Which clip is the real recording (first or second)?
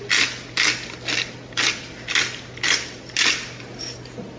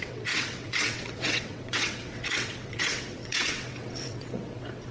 first